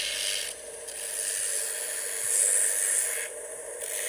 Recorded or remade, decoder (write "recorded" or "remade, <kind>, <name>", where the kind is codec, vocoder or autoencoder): recorded